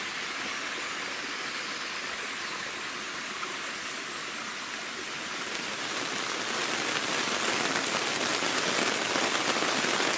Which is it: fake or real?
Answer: real